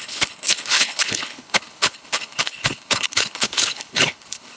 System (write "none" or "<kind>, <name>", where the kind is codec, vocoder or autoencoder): codec, HILCodec